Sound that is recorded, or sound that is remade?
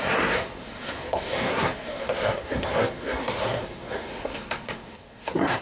remade